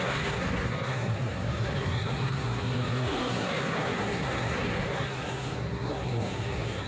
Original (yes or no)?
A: no